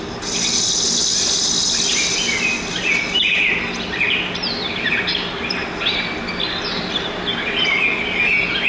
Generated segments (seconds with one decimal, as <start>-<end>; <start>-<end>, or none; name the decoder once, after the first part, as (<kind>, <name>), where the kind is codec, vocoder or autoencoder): none